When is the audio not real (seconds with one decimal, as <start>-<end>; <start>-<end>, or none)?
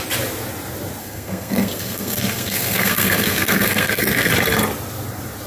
1.0-4.3